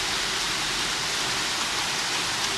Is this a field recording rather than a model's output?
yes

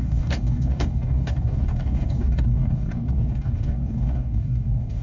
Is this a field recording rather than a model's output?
no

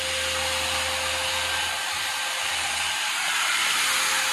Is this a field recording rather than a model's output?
yes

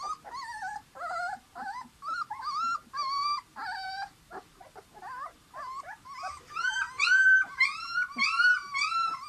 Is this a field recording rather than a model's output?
no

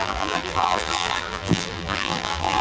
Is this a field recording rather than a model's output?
no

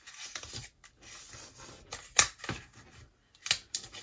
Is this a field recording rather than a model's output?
yes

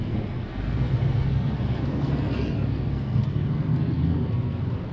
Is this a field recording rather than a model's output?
no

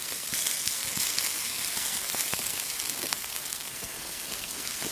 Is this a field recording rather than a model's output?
no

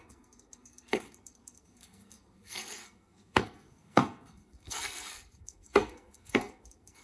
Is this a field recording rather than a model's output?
no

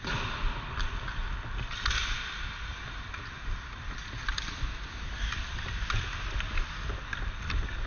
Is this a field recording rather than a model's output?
yes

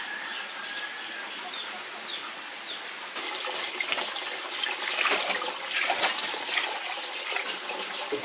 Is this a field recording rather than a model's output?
yes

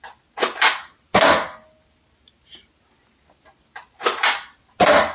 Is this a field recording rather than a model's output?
yes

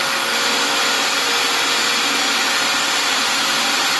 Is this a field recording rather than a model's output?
yes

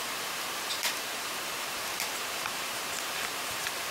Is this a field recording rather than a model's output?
no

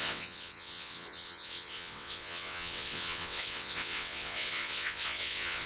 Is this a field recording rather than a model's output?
no